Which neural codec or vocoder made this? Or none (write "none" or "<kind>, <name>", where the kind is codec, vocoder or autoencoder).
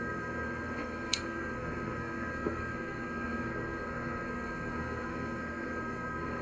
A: codec, SNAC